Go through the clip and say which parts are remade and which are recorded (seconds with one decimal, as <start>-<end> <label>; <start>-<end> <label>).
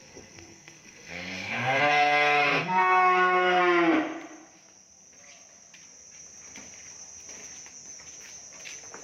0.0-3.6 remade; 3.6-9.0 recorded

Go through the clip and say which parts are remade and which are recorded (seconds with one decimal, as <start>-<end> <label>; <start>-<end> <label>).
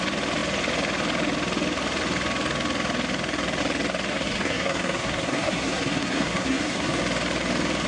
0.0-4.1 recorded; 4.1-7.0 remade; 7.0-7.9 recorded